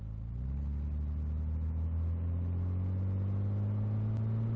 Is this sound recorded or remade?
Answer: recorded